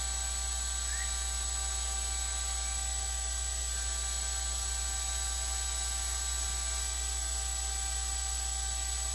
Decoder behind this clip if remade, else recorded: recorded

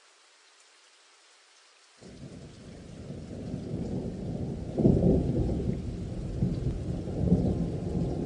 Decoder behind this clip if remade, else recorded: recorded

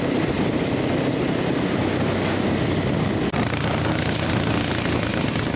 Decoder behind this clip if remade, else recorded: recorded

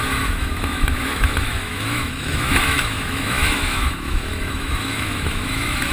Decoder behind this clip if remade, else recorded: remade, autoencoder, DAC-VAE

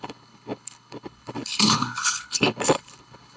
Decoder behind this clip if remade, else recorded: remade, codec, HILCodec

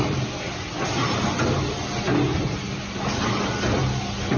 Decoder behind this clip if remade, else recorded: recorded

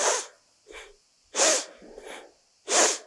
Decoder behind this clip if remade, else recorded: recorded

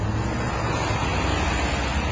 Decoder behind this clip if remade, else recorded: recorded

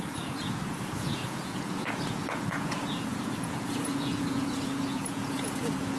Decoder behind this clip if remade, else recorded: remade, vocoder, Vocos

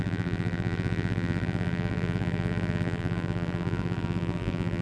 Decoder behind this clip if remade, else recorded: remade, vocoder, BigVGAN v2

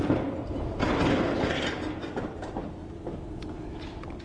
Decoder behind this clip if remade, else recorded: recorded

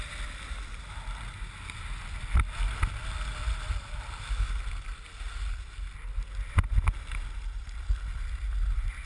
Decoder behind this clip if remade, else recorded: recorded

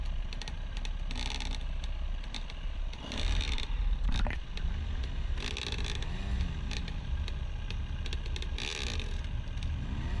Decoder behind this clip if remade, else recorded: recorded